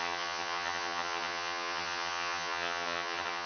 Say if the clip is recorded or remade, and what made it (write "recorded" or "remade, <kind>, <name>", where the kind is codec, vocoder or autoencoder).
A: remade, vocoder, HiFi-GAN